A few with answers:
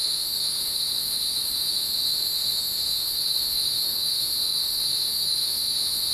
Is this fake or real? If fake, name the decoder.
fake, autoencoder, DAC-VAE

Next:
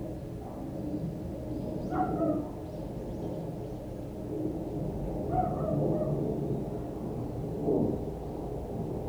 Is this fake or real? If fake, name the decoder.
real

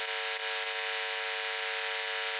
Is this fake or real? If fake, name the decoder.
real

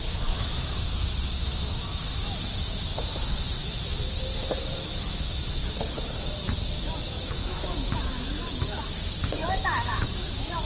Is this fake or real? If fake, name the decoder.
fake, autoencoder, DAC-VAE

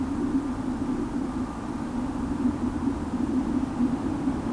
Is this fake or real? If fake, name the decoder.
real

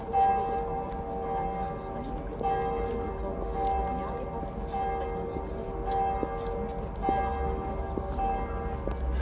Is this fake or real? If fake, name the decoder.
real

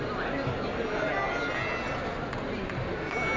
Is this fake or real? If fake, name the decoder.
real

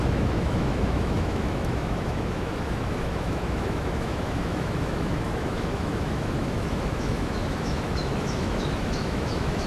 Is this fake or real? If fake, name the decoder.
fake, autoencoder, DAC-VAE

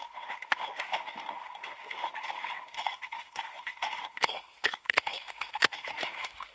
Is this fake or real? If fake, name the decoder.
fake, autoencoder, DAC-VAE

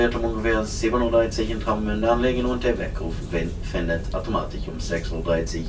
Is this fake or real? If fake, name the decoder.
real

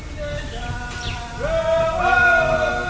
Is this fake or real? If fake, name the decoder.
real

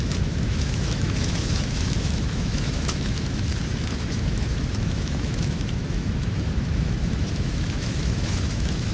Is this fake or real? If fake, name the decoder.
fake, autoencoder, DAC-VAE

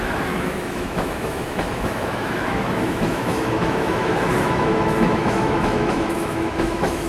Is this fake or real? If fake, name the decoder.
fake, autoencoder, DAC-VAE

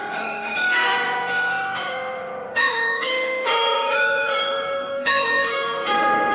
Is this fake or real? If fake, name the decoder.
fake, autoencoder, DAC-VAE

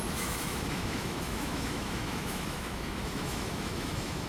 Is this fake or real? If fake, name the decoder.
fake, autoencoder, DAC-VAE